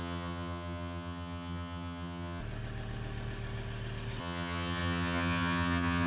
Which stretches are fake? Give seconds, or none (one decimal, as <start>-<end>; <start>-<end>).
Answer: 0.0-2.4; 4.2-6.1